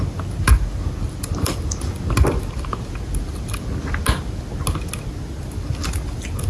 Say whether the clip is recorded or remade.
recorded